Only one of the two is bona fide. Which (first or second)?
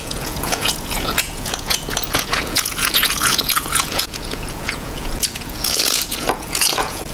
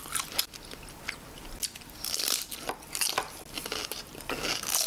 second